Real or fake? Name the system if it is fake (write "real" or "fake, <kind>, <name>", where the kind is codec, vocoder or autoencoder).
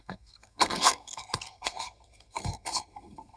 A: fake, codec, SNAC